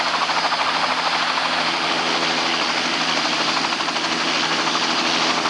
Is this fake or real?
real